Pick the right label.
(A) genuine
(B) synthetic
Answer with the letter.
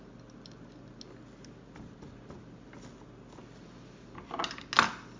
A